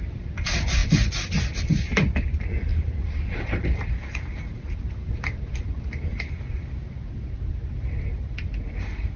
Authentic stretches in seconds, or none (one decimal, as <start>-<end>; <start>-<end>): 0.0-2.7; 6.1-9.2